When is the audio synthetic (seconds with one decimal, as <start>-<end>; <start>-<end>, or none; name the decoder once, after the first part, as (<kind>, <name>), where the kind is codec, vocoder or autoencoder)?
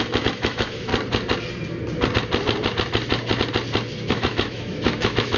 0.0-0.9 (autoencoder, DAC-VAE); 4.1-5.4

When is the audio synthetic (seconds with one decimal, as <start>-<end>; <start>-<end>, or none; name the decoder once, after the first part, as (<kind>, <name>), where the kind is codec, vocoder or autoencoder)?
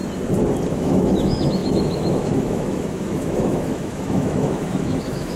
0.7-5.4 (autoencoder, DAC-VAE)